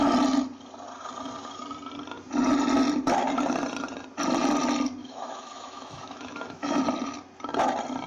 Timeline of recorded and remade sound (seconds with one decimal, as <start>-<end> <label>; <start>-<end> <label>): 0.0-5.0 recorded; 5.0-6.8 remade; 6.8-8.1 recorded